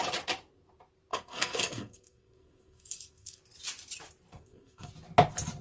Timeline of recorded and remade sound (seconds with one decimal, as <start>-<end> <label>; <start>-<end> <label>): 0.0-1.1 recorded; 1.1-3.4 remade; 3.4-4.3 recorded; 4.3-4.9 remade; 4.9-5.6 recorded